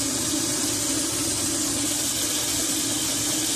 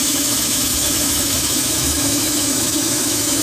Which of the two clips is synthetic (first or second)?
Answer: second